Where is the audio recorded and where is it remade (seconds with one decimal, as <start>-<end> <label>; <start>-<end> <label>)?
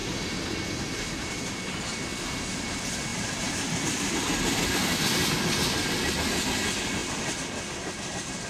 0.0-1.5 remade; 1.5-3.1 recorded; 3.1-5.3 remade; 5.3-7.0 recorded; 7.0-7.9 remade; 7.9-8.5 recorded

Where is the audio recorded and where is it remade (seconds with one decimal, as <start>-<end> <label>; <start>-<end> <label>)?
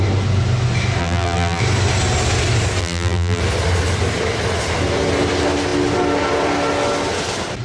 0.0-1.0 recorded; 1.0-1.6 remade; 1.6-2.8 recorded; 2.8-3.4 remade; 3.4-7.6 recorded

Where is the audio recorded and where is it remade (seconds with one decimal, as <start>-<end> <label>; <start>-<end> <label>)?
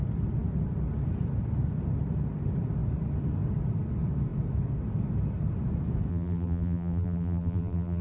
0.0-6.1 recorded; 6.1-8.0 remade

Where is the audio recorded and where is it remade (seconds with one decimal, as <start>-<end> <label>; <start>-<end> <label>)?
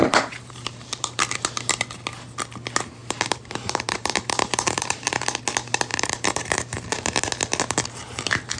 0.0-1.2 remade; 1.2-3.0 recorded; 3.0-5.2 remade; 5.2-5.9 recorded; 5.9-7.2 remade; 7.2-8.6 recorded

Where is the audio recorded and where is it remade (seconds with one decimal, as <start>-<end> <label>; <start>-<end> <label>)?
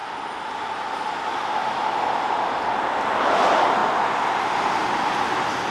0.0-5.7 recorded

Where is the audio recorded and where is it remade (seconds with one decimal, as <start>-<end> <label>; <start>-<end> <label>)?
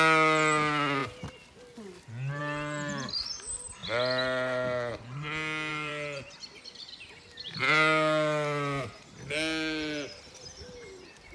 0.0-5.7 recorded; 5.7-7.1 remade; 7.1-11.3 recorded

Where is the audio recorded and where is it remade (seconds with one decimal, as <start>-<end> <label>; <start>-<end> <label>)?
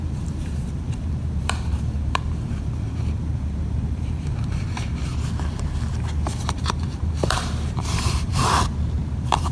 0.0-5.1 remade; 5.1-6.2 recorded; 6.2-8.3 remade; 8.3-9.1 recorded; 9.1-9.5 remade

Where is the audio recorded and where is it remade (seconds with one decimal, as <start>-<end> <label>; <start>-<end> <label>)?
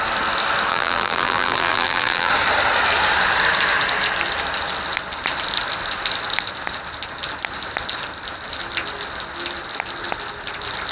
0.0-0.7 recorded; 0.7-2.3 remade; 2.3-10.9 recorded